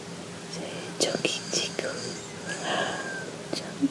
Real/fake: real